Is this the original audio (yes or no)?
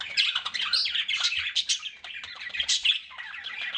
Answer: yes